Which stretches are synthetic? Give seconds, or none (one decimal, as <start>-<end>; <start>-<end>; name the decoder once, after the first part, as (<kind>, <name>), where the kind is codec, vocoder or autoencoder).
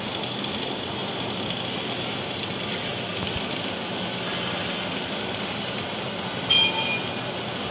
none